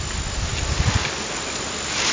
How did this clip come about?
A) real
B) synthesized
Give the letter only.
A